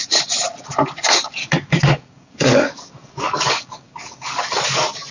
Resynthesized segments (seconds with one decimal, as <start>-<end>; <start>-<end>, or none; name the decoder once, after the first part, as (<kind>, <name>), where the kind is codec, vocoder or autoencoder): 1.4-4.5 (codec, DAC)